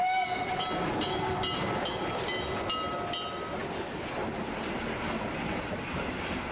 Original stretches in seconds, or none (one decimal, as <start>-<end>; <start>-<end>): 0.0-6.5